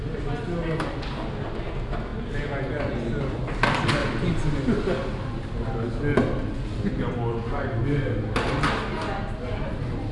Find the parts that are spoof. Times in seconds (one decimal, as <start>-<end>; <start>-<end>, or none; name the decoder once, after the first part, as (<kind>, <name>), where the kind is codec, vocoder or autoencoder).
none